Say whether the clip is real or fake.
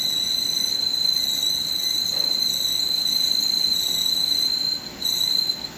real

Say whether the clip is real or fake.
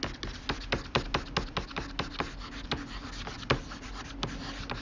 real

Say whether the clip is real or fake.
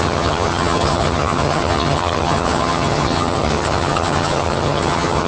fake